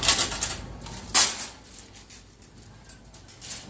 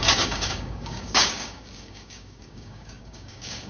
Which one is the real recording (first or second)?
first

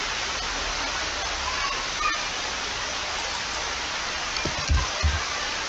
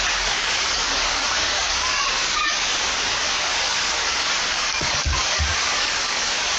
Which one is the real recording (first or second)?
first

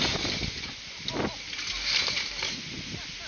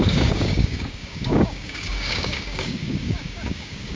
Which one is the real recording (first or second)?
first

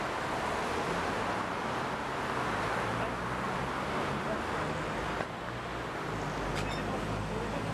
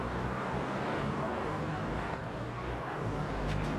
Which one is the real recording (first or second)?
first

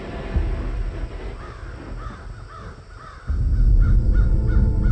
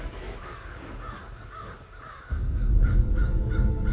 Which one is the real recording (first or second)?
first